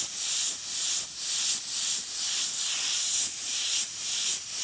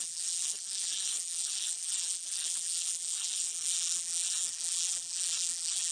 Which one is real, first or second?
first